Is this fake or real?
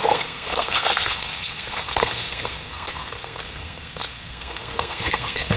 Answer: fake